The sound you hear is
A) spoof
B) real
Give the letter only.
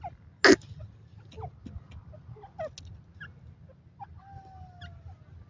B